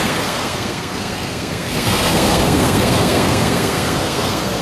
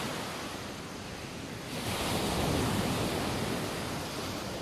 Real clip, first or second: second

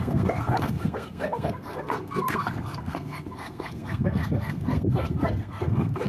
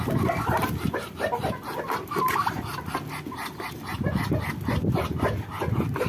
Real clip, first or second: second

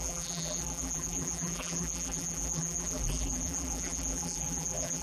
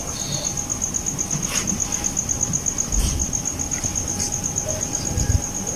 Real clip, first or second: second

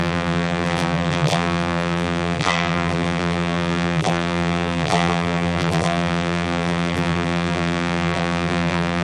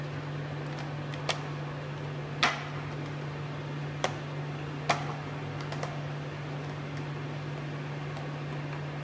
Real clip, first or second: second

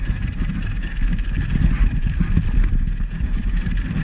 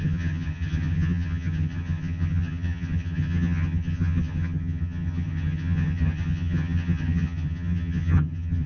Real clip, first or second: first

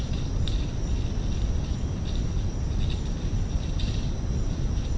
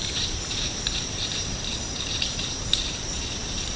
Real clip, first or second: first